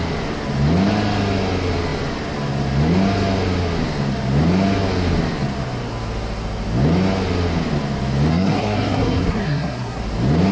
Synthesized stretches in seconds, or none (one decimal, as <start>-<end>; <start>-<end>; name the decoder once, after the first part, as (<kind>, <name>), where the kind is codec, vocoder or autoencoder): 8.3-10.0 (codec, SNAC)